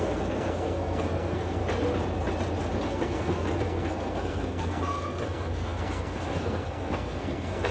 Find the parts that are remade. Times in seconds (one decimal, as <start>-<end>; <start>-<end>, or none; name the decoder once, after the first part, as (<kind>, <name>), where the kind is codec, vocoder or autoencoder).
0.0-1.6 (codec, SNAC); 2.9-7.7